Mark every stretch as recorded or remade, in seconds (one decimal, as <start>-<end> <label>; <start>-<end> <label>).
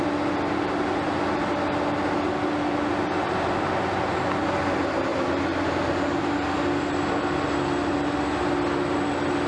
0.0-9.5 recorded